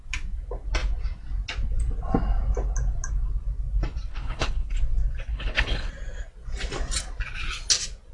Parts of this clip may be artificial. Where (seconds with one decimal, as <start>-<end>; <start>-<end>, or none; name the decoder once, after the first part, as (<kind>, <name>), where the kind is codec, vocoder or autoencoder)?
4.1-4.8 (codec, HILCodec); 5.3-5.9

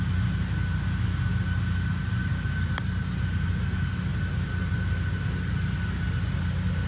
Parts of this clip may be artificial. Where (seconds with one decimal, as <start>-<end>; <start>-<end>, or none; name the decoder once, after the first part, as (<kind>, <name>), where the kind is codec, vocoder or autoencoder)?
2.3-3.2 (vocoder, BigVGAN v2)

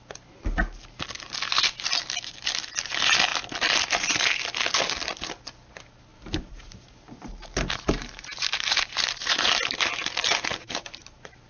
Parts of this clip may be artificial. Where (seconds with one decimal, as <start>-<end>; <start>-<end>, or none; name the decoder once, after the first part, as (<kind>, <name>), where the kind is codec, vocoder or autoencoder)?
6.1-9.5 (vocoder, BigVGAN v2); 10.6-11.5

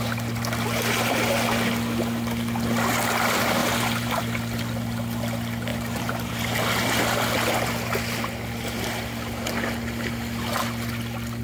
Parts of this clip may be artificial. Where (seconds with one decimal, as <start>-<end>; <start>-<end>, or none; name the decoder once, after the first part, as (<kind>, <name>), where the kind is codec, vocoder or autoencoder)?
3.6-4.2 (vocoder, BigVGAN v2); 5.7-6.3

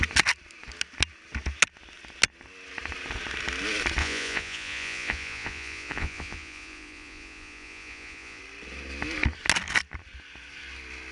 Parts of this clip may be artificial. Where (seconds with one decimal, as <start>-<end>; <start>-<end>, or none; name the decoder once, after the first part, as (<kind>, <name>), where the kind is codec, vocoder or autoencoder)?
4.0-8.4 (vocoder, Vocos)

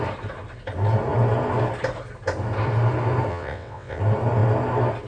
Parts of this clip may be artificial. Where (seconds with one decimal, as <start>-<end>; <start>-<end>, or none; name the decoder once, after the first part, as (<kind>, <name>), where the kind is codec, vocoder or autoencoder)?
3.3-4.0 (vocoder, WaveNeXt)